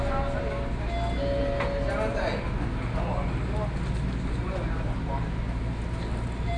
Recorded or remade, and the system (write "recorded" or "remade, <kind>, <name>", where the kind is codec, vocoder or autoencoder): recorded